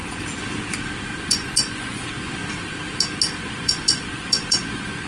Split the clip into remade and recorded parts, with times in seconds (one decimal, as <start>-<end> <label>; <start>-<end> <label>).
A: 0.0-1.2 recorded; 1.2-2.4 remade; 2.4-3.4 recorded; 3.4-5.1 remade